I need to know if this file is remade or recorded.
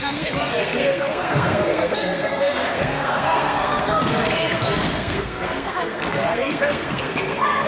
remade